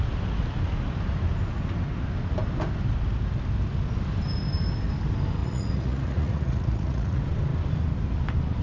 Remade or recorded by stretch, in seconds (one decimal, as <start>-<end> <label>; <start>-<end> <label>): 0.0-5.4 recorded; 5.4-7.2 remade; 7.2-8.6 recorded